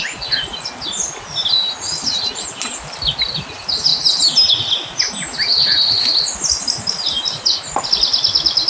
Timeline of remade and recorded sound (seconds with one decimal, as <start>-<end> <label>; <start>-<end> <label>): 0.0-8.7 recorded